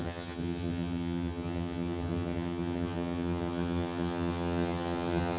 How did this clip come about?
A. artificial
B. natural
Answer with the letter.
A